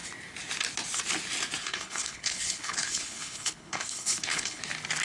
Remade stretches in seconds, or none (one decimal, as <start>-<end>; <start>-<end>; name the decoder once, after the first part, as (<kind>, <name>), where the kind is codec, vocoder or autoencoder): 1.6-4.6 (codec, HILCodec)